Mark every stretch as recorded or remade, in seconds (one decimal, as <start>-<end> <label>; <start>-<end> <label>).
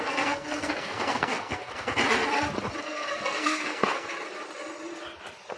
0.0-2.0 remade; 2.0-2.8 recorded; 2.8-4.1 remade; 4.1-5.6 recorded